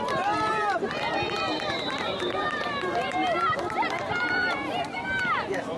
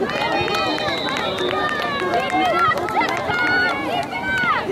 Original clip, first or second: second